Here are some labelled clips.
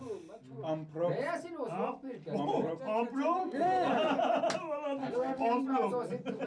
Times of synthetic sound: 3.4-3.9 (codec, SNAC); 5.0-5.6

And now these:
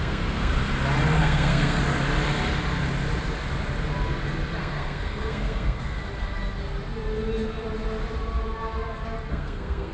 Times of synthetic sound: 0.0-0.5 (codec, SNAC); 1.2-1.8; 4.6-6.0; 9.3-9.9